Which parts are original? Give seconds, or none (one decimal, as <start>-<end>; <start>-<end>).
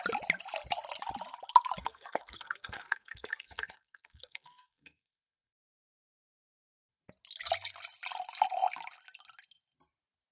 0.0-1.8; 7.0-10.3